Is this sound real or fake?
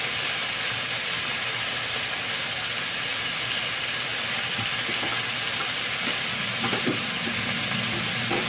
real